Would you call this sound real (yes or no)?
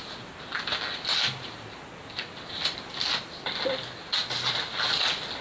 yes